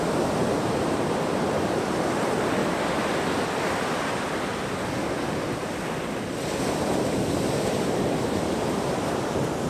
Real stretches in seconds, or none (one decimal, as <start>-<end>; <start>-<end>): 0.0-9.7